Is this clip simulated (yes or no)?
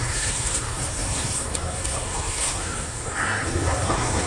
yes